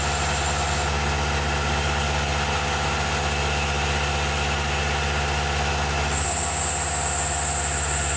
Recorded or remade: recorded